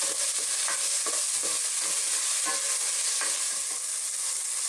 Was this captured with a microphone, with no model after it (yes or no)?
yes